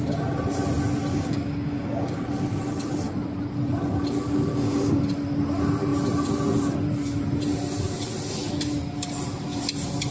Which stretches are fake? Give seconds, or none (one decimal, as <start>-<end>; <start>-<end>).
1.1-2.2; 4.5-5.0